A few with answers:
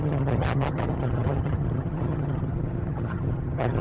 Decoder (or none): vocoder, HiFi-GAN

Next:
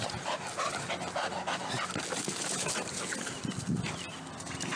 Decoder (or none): none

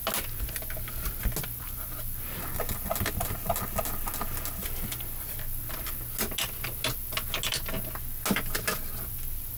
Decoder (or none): none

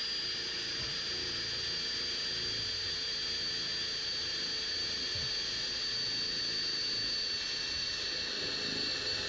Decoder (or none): none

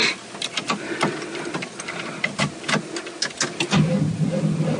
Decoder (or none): none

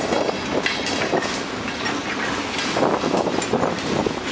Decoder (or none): none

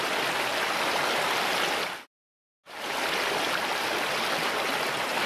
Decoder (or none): none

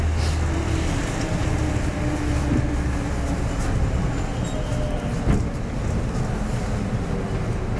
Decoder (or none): none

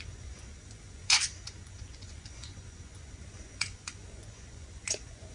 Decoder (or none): vocoder, Vocos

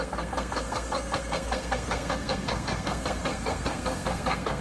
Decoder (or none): codec, SNAC